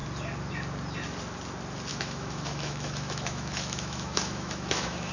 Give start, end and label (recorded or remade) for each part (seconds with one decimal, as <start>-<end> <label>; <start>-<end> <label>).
0.0-1.9 recorded; 1.9-5.1 remade